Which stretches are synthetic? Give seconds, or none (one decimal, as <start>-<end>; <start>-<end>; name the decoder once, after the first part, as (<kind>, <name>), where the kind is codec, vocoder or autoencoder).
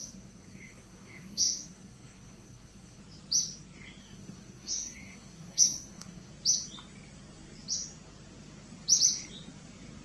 0.0-3.0 (codec, SNAC); 4.0-6.3